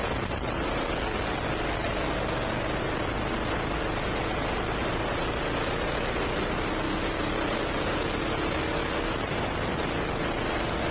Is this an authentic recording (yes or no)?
yes